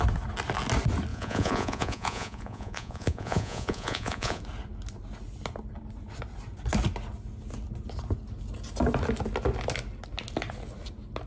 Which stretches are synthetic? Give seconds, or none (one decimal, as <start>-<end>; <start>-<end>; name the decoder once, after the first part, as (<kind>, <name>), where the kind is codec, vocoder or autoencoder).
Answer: 1.1-4.4 (vocoder, Vocos)